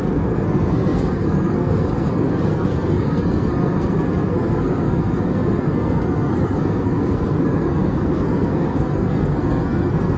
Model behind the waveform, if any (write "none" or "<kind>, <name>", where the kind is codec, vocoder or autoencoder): codec, SNAC